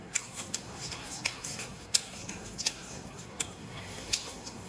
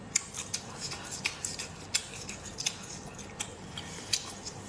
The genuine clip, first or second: second